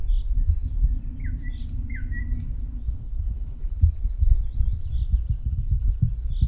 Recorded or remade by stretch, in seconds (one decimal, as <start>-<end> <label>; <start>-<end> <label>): 0.0-3.0 recorded; 3.0-3.6 remade; 3.6-5.4 recorded; 5.4-5.9 remade; 5.9-6.5 recorded

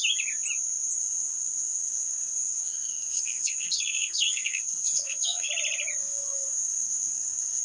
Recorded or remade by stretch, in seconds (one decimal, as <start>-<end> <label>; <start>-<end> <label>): 0.0-1.0 recorded; 1.0-5.5 remade; 5.5-6.0 recorded; 6.0-7.6 remade

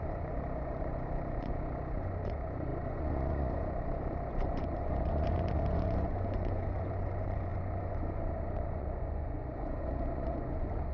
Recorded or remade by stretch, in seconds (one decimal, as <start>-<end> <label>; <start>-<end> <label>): 0.0-10.9 remade

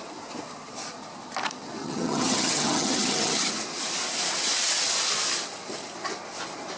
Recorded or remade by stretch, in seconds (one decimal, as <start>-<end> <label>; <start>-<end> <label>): 0.0-1.8 recorded; 1.8-3.5 remade; 3.5-6.8 recorded